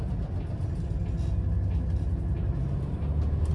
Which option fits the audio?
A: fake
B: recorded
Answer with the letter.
B